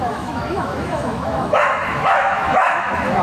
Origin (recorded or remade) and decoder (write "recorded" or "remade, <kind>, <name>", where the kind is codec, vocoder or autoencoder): remade, autoencoder, DAC-VAE